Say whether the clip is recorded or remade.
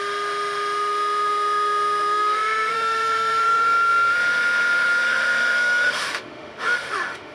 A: remade